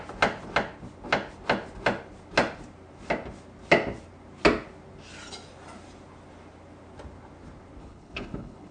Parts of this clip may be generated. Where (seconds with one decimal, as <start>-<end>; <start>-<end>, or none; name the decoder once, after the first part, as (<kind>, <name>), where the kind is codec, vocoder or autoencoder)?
7.8-8.7 (codec, HILCodec)